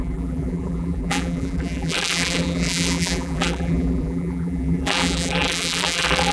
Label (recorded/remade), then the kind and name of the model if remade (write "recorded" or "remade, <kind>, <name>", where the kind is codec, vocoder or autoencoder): remade, vocoder, BigVGAN v2